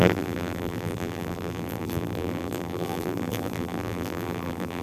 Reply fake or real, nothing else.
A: fake